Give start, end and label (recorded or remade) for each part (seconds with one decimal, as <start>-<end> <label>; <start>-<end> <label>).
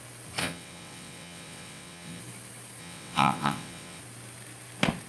0.0-0.4 recorded; 0.4-2.2 remade; 2.2-2.8 recorded; 2.8-4.0 remade; 4.0-5.1 recorded